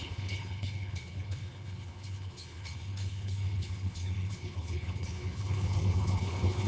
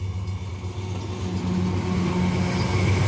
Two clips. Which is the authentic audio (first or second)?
second